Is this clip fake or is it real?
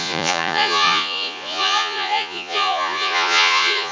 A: fake